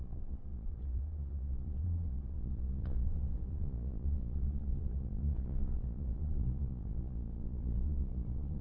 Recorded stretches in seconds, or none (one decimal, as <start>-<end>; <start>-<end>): none

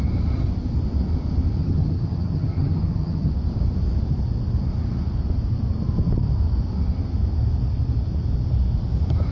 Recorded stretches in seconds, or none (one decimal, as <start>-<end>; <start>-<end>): 0.0-1.6; 3.3-9.3

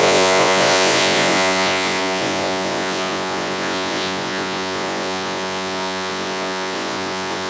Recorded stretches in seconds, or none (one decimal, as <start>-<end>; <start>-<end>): none

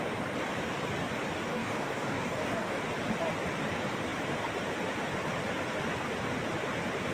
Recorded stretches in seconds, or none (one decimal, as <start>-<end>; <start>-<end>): 0.0-1.5; 2.8-7.1

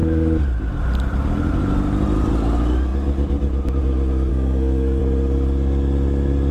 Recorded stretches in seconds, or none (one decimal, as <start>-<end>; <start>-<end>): 0.0-4.3; 5.0-6.5

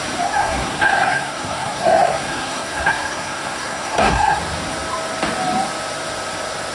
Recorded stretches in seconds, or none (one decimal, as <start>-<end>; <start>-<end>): 0.0-0.4; 4.4-6.7

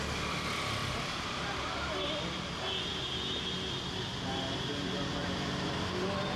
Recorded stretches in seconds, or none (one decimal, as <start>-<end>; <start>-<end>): 0.0-0.8; 1.6-5.2; 5.7-6.4